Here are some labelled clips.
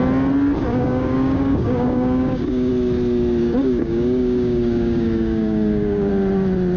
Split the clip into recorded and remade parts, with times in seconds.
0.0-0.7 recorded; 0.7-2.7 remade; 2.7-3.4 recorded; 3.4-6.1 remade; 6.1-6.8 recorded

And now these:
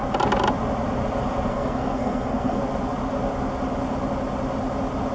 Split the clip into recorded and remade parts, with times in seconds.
0.0-1.5 recorded; 1.5-2.6 remade; 2.6-5.1 recorded

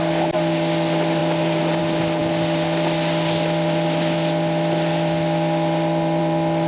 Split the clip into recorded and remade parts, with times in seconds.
0.0-6.7 recorded

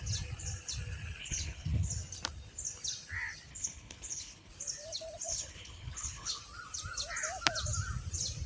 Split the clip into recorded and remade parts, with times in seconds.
0.0-1.2 recorded; 1.2-1.9 remade; 1.9-3.5 recorded; 3.5-4.5 remade; 4.5-5.3 recorded; 5.3-6.4 remade; 6.4-8.5 recorded

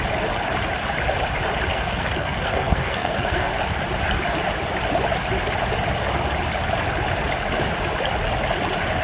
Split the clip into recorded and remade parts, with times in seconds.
0.0-1.7 recorded; 1.7-3.6 remade; 3.6-9.0 recorded

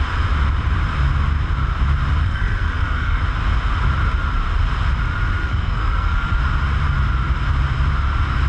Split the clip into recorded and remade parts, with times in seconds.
0.0-2.2 recorded; 2.2-3.2 remade; 3.2-5.4 recorded; 5.4-6.4 remade; 6.4-8.5 recorded

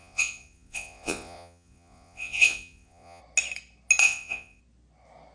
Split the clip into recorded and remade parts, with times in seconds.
0.0-3.2 remade; 3.2-4.0 recorded; 4.0-4.6 remade; 4.6-5.3 recorded